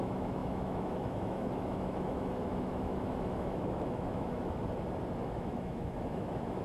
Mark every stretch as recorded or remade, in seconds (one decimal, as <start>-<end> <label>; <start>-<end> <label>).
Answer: 0.0-4.6 remade; 4.6-5.2 recorded; 5.2-6.6 remade